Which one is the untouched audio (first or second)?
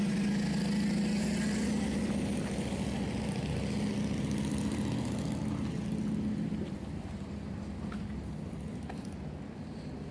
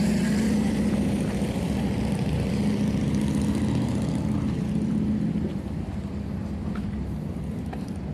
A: first